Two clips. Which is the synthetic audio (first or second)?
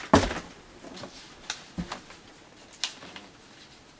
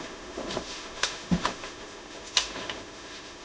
second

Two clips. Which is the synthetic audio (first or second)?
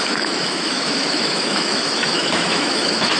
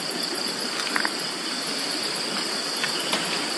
first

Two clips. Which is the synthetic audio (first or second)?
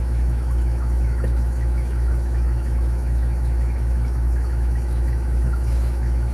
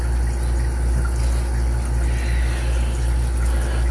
first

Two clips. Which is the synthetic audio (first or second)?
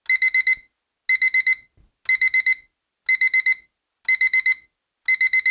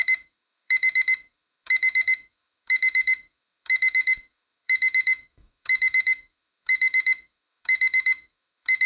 second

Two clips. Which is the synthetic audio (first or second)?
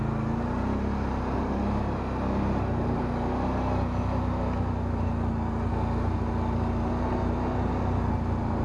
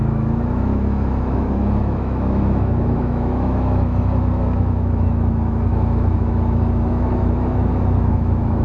second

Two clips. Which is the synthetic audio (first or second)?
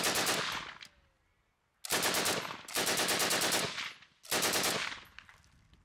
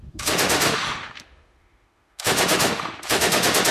second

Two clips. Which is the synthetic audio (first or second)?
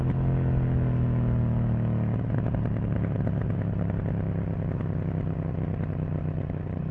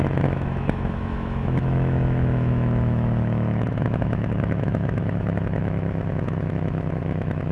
second